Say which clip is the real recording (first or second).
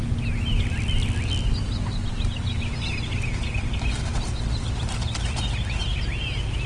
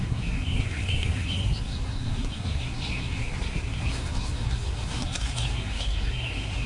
first